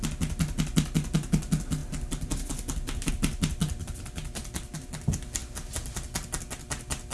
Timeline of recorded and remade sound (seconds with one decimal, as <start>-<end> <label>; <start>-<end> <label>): 0.0-7.1 recorded